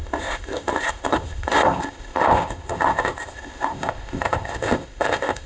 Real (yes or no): no